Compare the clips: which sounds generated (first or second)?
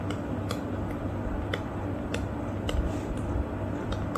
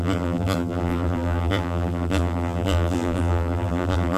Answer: second